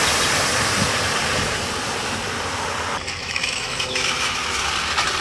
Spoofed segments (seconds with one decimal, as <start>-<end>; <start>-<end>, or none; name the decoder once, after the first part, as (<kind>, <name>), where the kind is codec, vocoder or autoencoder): 3.2-4.7 (autoencoder, DAC-VAE)